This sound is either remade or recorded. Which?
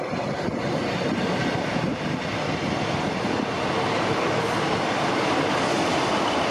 remade